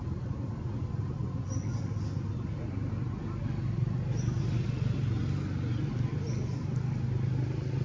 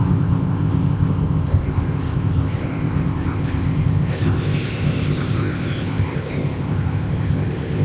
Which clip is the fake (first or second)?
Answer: second